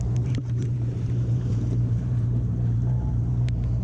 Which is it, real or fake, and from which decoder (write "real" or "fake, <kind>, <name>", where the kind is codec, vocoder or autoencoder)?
fake, vocoder, BigVGAN v2